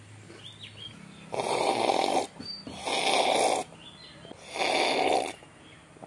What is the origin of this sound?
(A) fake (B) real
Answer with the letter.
B